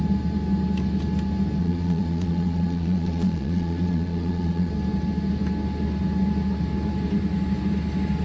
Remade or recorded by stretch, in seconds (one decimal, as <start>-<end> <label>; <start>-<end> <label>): 0.0-1.6 recorded; 1.6-4.7 remade; 4.7-8.2 recorded